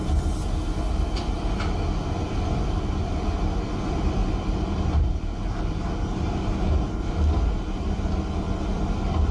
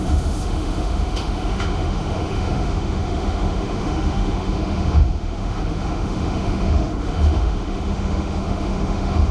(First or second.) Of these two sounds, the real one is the first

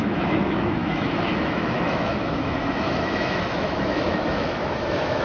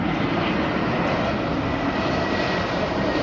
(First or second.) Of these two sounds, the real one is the second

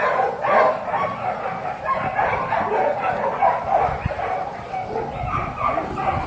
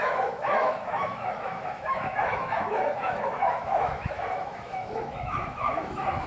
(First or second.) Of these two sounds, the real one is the first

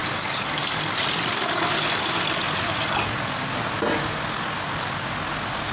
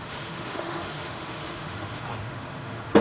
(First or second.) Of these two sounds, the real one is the first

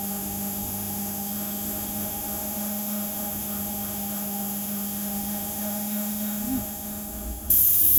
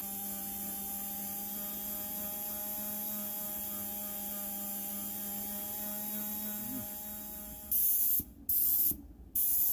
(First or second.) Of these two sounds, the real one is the second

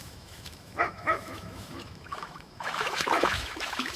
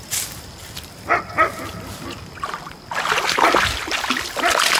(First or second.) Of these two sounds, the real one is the second